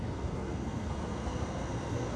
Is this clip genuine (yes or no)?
no